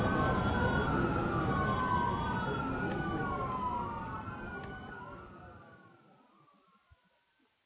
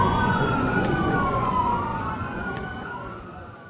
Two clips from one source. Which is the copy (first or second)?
second